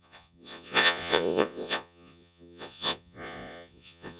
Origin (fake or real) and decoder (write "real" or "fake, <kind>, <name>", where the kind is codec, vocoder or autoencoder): fake, vocoder, Vocos